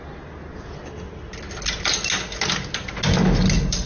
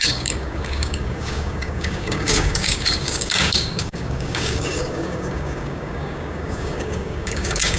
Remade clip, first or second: second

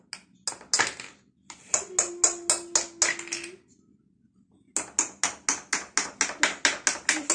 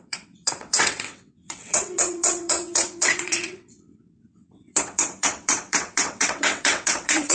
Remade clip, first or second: second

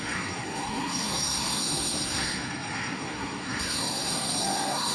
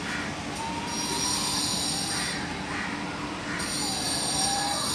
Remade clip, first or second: first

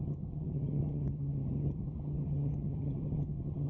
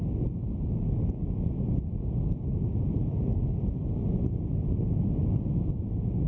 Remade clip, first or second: first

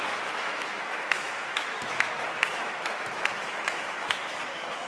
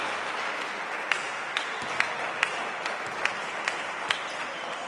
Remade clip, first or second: first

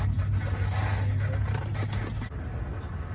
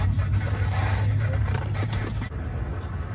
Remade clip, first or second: second